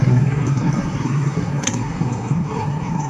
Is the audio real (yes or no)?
no